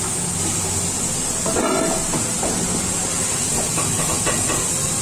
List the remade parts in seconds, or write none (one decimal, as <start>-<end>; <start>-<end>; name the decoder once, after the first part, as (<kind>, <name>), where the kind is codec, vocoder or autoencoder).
none